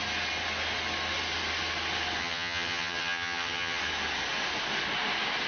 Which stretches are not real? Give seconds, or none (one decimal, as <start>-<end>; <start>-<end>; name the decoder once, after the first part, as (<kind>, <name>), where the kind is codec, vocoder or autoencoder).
2.2-3.8 (vocoder, HiFi-GAN)